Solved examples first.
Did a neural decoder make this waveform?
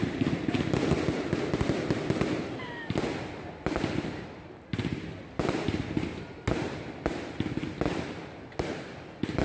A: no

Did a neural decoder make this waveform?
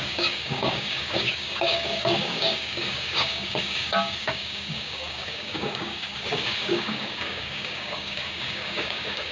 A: yes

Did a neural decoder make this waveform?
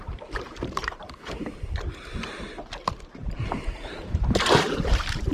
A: yes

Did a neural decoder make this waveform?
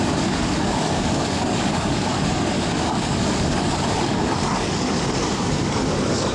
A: yes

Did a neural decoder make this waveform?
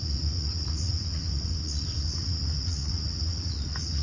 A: yes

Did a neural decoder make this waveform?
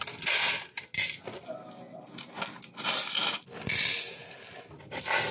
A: no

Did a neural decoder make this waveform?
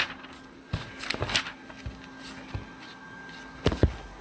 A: no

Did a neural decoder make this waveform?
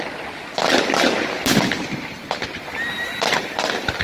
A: no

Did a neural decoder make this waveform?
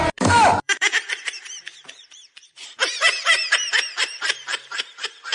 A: yes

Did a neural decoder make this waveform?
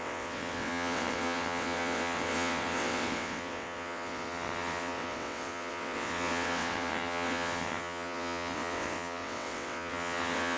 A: yes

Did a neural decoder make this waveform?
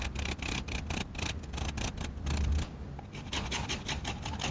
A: no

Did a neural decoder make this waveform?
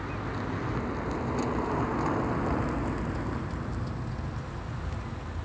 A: no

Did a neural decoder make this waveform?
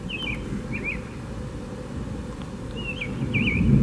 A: no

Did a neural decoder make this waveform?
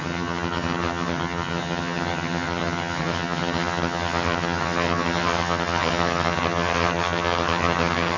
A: yes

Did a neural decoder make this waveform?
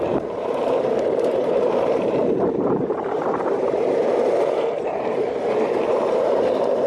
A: yes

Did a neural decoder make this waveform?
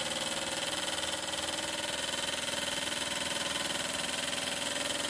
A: no